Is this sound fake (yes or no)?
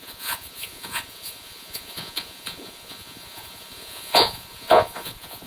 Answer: yes